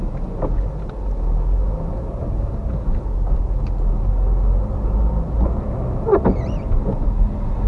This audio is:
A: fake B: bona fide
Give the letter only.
B